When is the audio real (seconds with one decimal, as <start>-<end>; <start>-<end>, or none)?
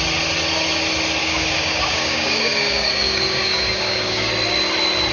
0.0-1.2; 4.3-5.1